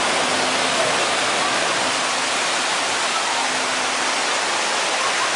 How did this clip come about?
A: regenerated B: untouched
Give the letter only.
B